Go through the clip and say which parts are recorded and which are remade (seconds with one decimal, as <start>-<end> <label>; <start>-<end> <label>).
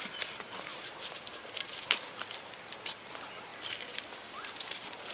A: 0.0-5.1 recorded